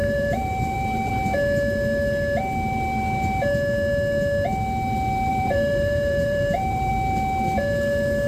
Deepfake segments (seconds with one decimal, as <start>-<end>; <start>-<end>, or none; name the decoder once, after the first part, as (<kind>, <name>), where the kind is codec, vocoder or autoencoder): 0.0-1.1 (vocoder, BigVGAN v2); 5.3-6.9